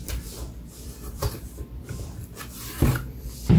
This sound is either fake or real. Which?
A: fake